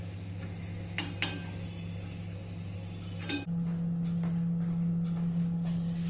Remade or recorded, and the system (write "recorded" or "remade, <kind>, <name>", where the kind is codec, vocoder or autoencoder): recorded